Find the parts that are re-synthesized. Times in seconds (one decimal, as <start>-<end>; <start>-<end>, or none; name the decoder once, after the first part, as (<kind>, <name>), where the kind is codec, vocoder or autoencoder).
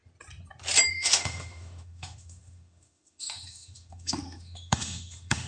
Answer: 0.9-5.5 (autoencoder, DAC-VAE)